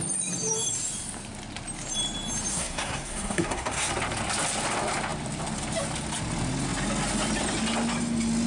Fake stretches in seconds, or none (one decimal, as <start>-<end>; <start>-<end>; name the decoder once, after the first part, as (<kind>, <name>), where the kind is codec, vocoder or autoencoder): 2.5-3.9 (codec, SNAC)